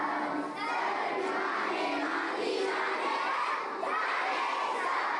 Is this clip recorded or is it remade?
recorded